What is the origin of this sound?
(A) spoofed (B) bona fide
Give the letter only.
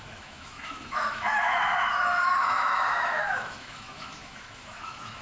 A